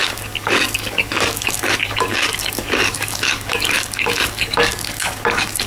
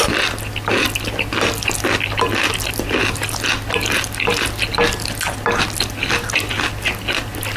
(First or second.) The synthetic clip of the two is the first